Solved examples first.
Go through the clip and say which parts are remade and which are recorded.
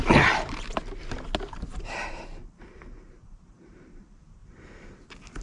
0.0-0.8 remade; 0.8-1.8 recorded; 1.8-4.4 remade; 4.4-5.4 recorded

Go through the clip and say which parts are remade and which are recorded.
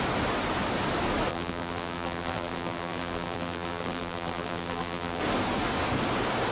0.0-1.3 recorded; 1.3-5.2 remade; 5.2-6.5 recorded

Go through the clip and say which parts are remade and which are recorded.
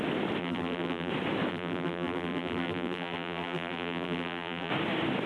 0.0-0.4 recorded; 0.4-1.1 remade; 1.1-1.5 recorded; 1.5-4.7 remade; 4.7-5.3 recorded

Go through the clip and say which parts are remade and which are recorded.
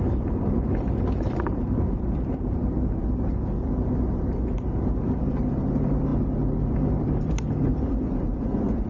0.0-6.1 remade; 6.1-7.0 recorded; 7.0-8.9 remade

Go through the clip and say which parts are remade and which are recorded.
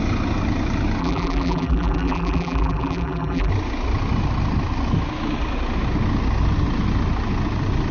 0.0-1.0 recorded; 1.0-3.5 remade; 3.5-7.9 recorded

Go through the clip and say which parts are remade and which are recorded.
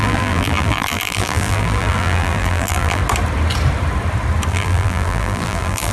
0.0-3.0 remade; 3.0-4.5 recorded; 4.5-5.9 remade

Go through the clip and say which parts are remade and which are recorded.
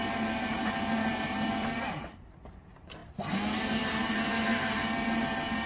0.0-5.7 recorded